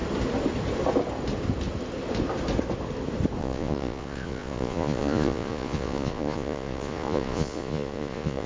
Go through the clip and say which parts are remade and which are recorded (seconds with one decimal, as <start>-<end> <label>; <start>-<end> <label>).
0.0-3.4 recorded; 3.4-8.5 remade